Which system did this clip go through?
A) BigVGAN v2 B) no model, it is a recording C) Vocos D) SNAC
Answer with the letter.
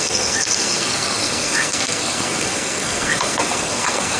D